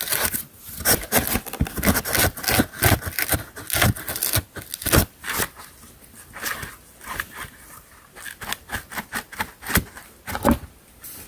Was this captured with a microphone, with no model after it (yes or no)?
yes